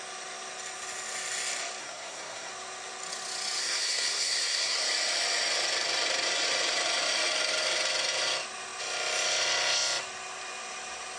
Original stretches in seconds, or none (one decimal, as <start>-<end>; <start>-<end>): 0.0-1.8; 2.5-3.6; 4.8-11.2